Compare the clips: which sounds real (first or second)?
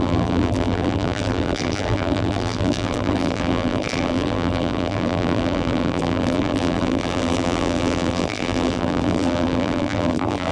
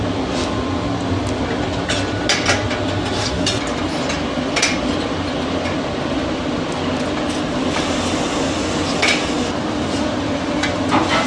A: second